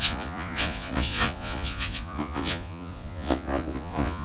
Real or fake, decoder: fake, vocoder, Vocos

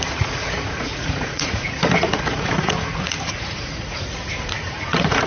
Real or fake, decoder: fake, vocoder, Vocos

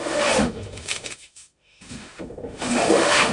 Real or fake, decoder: fake, autoencoder, DAC-VAE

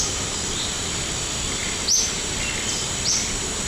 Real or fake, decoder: real